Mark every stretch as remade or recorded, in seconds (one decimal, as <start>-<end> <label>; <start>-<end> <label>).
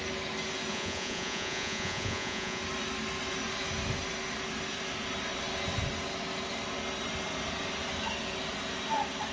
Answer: 0.0-0.7 recorded; 0.7-2.6 remade; 2.6-9.3 recorded